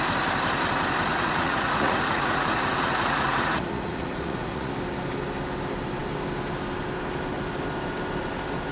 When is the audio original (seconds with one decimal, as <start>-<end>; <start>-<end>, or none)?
0.0-1.1; 4.7-8.7

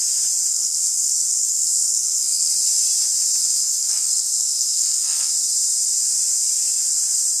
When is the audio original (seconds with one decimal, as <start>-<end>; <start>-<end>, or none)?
0.0-0.5; 2.5-3.4; 5.3-7.4

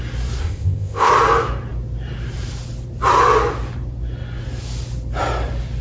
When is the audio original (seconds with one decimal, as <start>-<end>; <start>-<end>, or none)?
0.0-0.4; 1.1-5.8

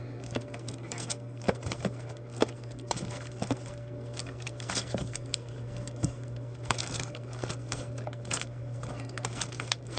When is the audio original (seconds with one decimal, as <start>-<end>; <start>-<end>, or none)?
none